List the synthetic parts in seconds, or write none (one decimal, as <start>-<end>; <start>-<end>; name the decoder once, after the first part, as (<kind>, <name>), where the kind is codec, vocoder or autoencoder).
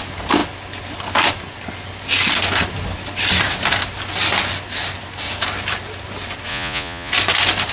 6.5-7.1 (vocoder, Vocos)